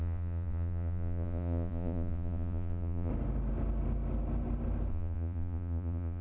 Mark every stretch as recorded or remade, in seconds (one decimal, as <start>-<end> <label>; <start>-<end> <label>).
0.0-3.1 remade; 3.1-4.9 recorded; 4.9-6.2 remade